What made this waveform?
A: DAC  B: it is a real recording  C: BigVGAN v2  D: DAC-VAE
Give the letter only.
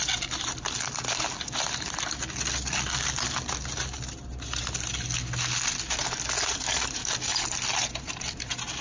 B